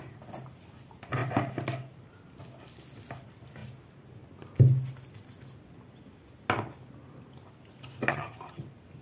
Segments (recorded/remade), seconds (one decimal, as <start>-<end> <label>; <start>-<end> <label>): 0.0-8.1 recorded; 8.1-8.6 remade; 8.6-9.0 recorded